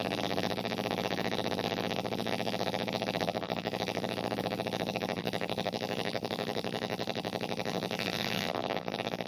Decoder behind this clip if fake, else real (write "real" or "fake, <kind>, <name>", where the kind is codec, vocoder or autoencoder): fake, vocoder, BigVGAN v2